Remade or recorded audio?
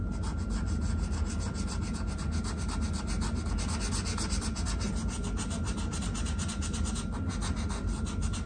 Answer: recorded